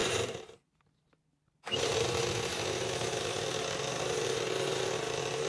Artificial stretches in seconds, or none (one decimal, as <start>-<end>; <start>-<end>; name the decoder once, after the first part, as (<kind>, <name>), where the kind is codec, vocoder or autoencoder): 0.0-3.3 (vocoder, BigVGAN v2)